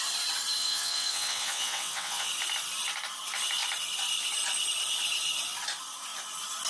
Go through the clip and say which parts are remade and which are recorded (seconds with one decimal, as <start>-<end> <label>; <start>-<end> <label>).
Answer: 0.0-0.6 recorded; 0.6-2.3 remade; 2.3-6.7 recorded

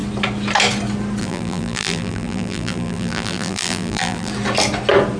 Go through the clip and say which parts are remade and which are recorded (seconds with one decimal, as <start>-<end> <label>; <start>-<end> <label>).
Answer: 0.0-1.2 recorded; 1.2-4.3 remade; 4.3-5.2 recorded

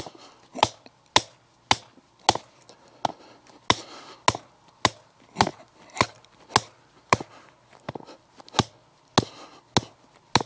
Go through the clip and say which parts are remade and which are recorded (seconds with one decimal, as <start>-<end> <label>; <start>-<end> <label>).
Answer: 0.0-10.5 recorded

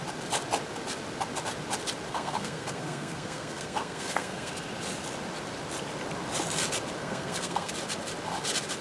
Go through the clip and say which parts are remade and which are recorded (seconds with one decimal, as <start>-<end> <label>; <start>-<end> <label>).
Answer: 0.0-2.1 recorded; 2.1-4.5 remade; 4.5-7.0 recorded; 7.0-7.7 remade; 7.7-8.8 recorded

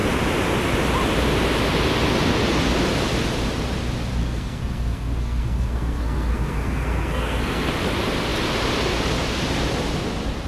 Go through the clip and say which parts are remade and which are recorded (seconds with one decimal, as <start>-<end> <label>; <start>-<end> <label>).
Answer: 0.0-4.2 recorded; 4.2-7.7 remade; 7.7-10.5 recorded

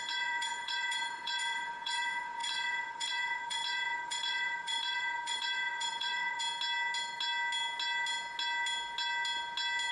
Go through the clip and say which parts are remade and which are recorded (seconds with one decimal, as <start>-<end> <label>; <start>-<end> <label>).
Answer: 0.0-6.4 remade; 6.4-9.9 recorded